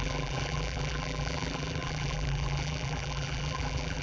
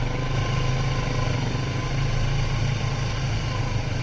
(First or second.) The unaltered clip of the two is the second